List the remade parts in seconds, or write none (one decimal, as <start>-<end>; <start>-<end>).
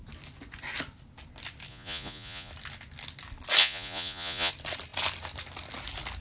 1.7-2.5; 3.6-4.5